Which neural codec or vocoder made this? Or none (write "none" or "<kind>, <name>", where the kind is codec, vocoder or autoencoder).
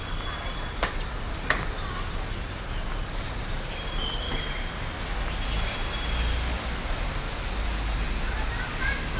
none